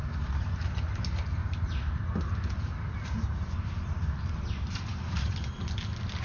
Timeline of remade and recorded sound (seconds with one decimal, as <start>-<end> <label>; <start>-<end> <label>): 0.0-1.4 recorded; 1.4-2.0 remade; 2.0-6.2 recorded